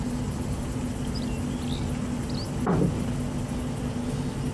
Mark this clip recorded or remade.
recorded